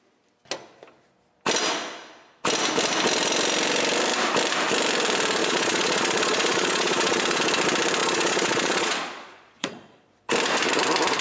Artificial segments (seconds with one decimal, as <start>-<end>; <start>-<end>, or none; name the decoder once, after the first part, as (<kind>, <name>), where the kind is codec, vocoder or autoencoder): 5.4-7.4 (vocoder, Vocos); 8.0-10.3